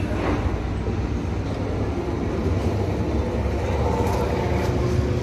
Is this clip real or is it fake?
real